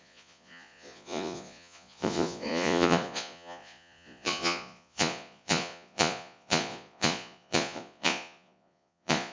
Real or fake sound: fake